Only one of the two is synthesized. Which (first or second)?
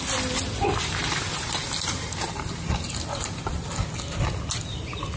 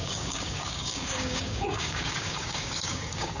second